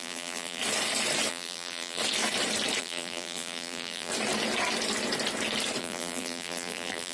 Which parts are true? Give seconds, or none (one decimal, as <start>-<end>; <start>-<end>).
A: 0.6-1.3; 2.0-2.8; 4.1-5.8